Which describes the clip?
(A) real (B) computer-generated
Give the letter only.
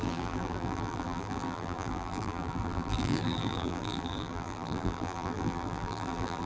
B